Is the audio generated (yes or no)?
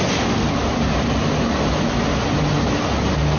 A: no